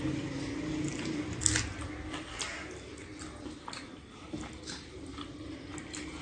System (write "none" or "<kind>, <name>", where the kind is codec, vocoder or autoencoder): none